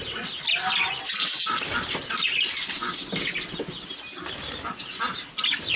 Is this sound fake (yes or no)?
no